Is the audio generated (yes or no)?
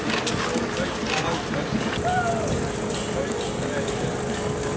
no